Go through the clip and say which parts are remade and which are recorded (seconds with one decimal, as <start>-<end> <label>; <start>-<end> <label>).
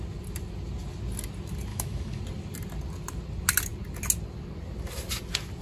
0.0-1.7 recorded; 1.7-2.2 remade; 2.2-5.6 recorded